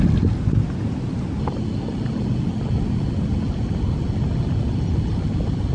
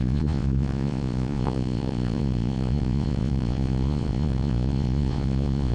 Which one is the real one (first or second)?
first